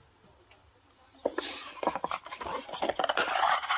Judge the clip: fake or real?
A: real